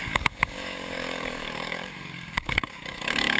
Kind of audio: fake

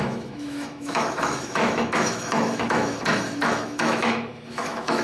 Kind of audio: fake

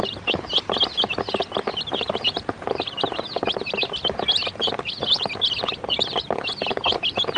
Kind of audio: real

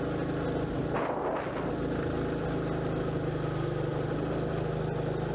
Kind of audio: real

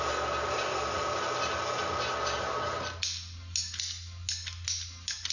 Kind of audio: real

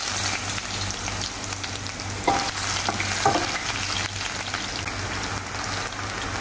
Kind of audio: real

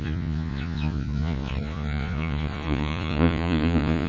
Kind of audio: fake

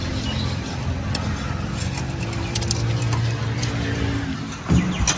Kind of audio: real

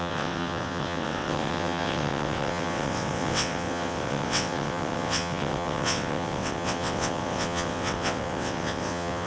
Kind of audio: fake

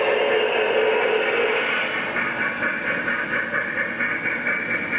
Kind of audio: real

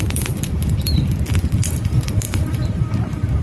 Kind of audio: fake